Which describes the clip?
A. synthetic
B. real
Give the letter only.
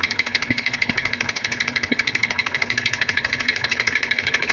A